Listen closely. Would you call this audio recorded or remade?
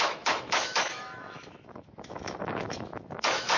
remade